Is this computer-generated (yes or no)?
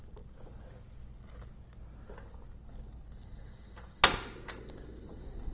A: no